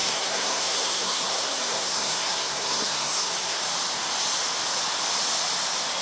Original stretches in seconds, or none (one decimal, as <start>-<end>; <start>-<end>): 3.6-6.0